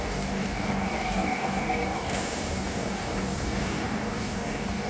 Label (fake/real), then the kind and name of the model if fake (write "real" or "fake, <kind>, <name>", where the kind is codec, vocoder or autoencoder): fake, codec, DAC